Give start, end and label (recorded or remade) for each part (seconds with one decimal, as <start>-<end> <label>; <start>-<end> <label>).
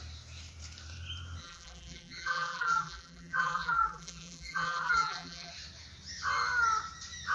0.0-1.4 recorded; 1.4-5.5 remade; 5.5-7.3 recorded